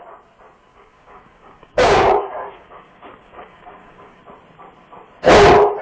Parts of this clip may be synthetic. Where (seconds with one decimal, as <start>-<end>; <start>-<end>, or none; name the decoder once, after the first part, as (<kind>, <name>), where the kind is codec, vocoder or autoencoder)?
0.7-4.2 (codec, DAC)